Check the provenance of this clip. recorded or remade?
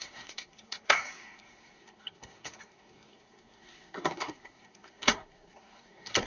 remade